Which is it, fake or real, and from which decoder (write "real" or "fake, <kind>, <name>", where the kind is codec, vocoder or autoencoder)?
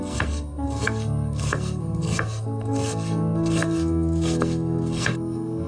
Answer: fake, codec, SNAC